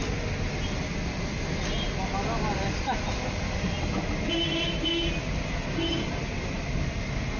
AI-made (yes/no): no